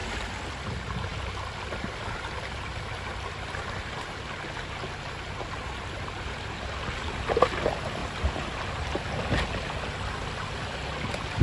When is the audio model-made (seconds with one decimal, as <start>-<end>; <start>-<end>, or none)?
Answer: none